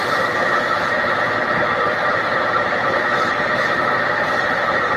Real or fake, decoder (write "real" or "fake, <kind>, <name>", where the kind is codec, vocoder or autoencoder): real